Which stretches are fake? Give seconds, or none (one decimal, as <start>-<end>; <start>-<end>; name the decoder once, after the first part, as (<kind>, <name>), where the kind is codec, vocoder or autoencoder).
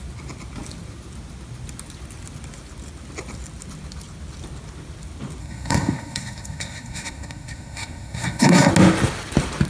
5.4-8.7 (codec, SNAC)